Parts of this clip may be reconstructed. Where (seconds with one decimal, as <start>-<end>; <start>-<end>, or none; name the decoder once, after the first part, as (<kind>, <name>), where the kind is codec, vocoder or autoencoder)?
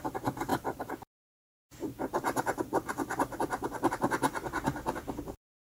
0.0-5.7 (vocoder, BigVGAN v2)